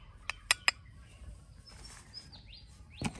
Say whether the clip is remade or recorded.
recorded